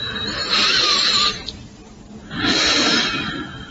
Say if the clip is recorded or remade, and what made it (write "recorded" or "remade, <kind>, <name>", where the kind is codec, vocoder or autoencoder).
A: recorded